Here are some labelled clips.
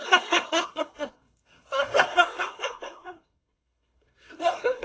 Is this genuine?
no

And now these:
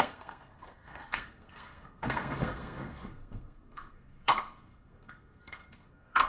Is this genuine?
no